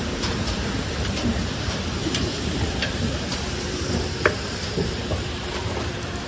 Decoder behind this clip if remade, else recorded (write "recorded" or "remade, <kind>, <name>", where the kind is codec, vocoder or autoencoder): remade, vocoder, BigVGAN v2